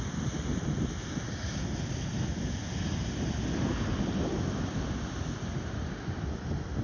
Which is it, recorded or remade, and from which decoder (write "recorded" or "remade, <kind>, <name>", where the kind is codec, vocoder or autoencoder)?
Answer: recorded